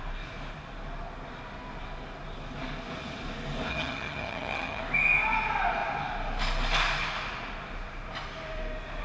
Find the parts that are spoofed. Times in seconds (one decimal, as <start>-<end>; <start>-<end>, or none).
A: 3.7-4.8